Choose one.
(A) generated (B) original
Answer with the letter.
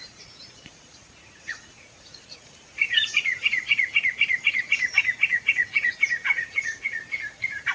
A